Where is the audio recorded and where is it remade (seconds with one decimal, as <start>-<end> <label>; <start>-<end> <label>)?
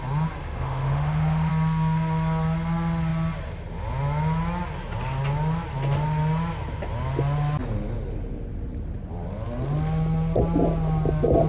0.0-0.4 recorded; 0.4-1.5 remade; 1.5-11.5 recorded